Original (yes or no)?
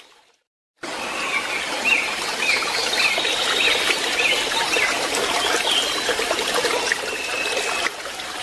yes